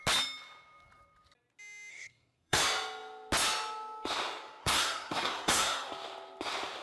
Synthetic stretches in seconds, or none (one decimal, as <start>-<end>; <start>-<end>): 1.9-2.6; 4.6-5.9

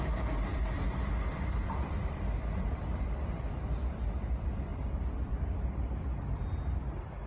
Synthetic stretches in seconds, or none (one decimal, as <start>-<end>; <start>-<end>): 0.5-3.6; 4.7-5.3

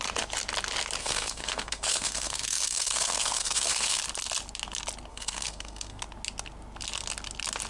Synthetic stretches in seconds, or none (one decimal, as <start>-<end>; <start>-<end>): 1.0-4.0; 5.1-6.0

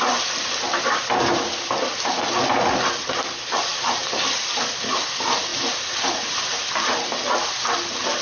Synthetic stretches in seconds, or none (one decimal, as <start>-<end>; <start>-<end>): none

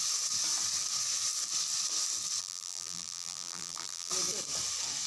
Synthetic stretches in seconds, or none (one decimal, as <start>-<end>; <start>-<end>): 2.4-4.1

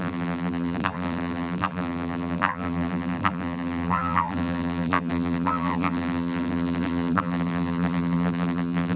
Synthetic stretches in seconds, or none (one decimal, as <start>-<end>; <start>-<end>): 0.0-9.0

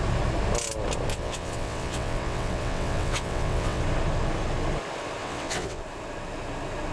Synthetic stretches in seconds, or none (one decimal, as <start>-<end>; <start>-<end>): 1.1-3.8; 5.2-5.8